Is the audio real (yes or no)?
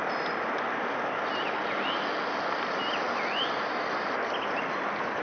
yes